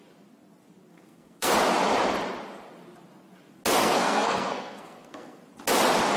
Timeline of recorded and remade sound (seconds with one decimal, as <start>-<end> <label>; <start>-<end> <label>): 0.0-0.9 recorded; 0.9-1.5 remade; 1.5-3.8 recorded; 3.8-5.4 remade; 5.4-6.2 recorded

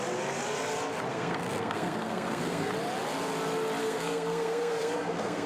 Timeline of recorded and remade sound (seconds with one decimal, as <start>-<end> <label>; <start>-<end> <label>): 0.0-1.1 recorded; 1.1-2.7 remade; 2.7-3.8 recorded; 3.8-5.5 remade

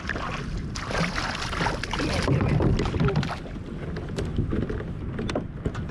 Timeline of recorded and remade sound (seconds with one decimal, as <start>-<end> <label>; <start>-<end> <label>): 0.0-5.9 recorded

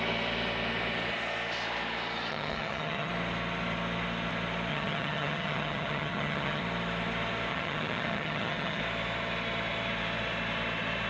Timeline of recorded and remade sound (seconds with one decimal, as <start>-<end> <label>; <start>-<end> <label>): 0.0-2.3 recorded; 2.3-3.1 remade; 3.1-4.7 recorded; 4.7-6.6 remade; 6.6-7.5 recorded; 7.5-8.8 remade; 8.8-11.1 recorded

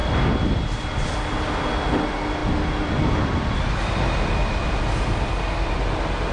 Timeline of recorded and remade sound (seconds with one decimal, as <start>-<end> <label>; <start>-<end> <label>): 0.0-6.3 recorded

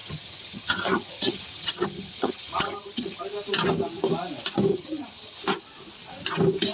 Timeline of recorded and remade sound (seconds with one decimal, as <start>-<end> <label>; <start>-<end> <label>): 0.0-3.2 remade; 3.2-4.7 recorded; 4.7-5.4 remade; 5.4-6.7 recorded

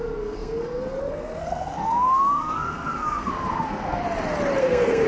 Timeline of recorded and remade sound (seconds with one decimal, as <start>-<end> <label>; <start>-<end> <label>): 0.0-4.0 remade; 4.0-4.6 recorded; 4.6-5.1 remade